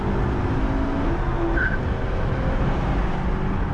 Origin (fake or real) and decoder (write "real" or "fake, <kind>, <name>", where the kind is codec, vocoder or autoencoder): real